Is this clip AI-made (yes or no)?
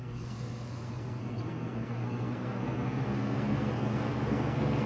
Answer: yes